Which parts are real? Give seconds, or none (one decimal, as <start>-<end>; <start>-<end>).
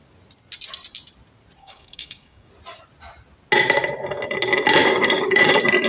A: 0.0-1.6; 2.5-4.8; 5.5-5.9